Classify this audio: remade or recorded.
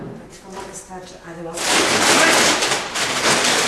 recorded